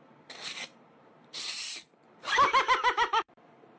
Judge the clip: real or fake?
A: fake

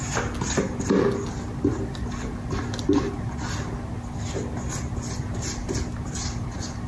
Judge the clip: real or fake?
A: real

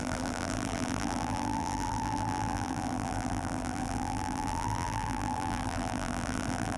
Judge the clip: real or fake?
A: fake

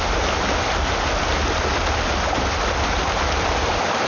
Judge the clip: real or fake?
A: real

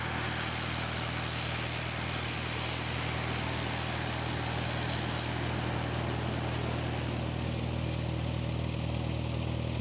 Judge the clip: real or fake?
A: real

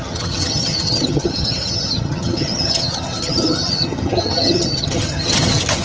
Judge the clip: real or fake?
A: fake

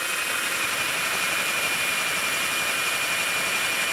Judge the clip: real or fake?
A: real